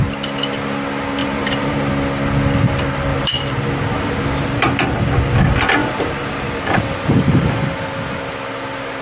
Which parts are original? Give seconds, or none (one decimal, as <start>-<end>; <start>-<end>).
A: 0.0-1.2; 1.9-3.1; 4.7-5.8; 7.1-9.0